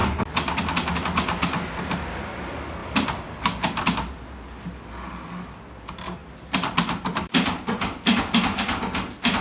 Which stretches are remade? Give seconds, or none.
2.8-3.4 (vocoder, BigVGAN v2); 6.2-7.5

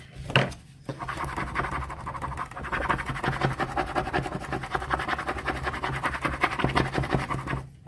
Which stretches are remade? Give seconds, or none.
0.9-3.1 (vocoder, BigVGAN v2)

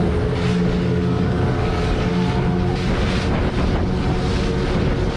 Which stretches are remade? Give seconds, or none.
0.0-2.1 (codec, DAC)

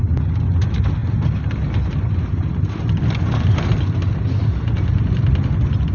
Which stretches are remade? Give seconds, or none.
none

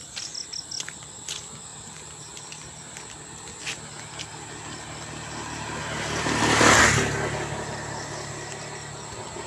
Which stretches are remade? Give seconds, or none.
1.7-2.8 (vocoder, BigVGAN v2); 5.8-6.8

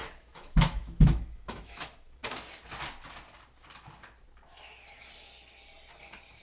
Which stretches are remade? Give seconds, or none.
0.0-2.2 (autoencoder, DAC-VAE); 6.0-6.4

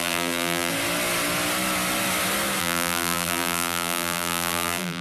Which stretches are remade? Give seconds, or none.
0.0-0.7 (vocoder, BigVGAN v2); 2.6-5.0